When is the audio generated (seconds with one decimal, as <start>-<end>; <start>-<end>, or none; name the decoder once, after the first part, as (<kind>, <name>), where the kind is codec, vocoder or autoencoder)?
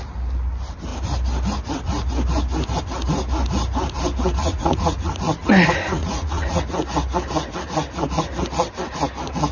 4.4-5.1 (vocoder, Vocos); 6.0-6.6